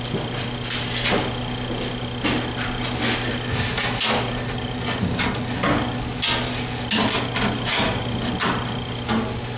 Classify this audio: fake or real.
real